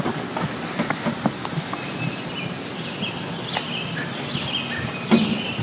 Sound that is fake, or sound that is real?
real